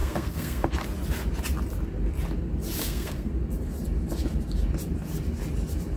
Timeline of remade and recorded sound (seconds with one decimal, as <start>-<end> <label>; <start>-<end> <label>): 0.0-0.7 remade; 0.7-2.8 recorded; 2.8-3.3 remade; 3.3-6.0 recorded